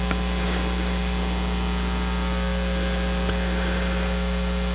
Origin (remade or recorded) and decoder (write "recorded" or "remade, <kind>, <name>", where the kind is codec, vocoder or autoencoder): recorded